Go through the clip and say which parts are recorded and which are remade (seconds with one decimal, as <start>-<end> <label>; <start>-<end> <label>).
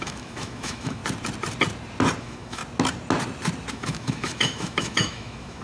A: 0.0-1.0 remade; 1.0-2.2 recorded; 2.2-2.6 remade; 2.6-3.7 recorded; 3.7-5.6 remade